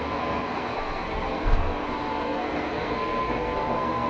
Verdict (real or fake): fake